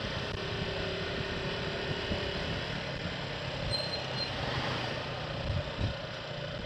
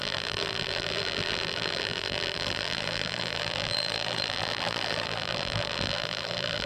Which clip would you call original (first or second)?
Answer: first